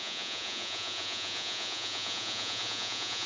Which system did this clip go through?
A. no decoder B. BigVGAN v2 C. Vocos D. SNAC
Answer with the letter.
C